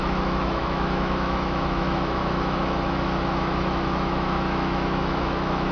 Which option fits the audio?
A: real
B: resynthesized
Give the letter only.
B